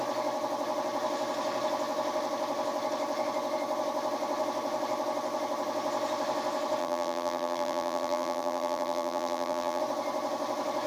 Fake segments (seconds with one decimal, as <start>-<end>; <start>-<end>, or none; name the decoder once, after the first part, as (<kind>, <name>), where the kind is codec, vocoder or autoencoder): 6.8-9.8 (vocoder, BigVGAN v2)